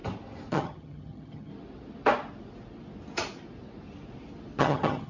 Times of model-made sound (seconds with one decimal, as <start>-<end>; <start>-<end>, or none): 0.5-1.5; 4.6-5.1